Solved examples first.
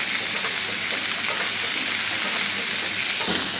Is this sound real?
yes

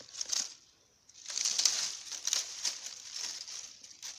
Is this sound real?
yes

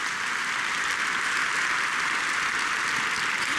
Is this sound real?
yes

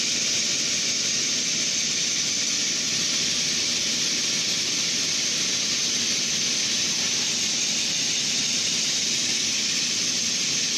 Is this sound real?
yes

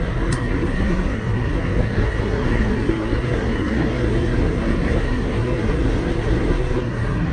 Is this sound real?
no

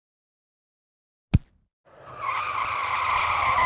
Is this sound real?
yes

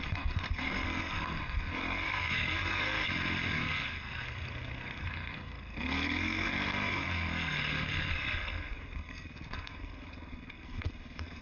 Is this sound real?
no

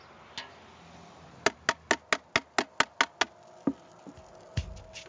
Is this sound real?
yes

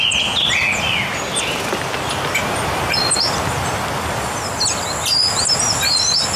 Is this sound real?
yes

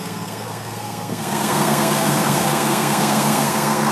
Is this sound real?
no